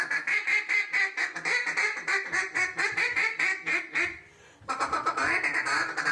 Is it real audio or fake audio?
real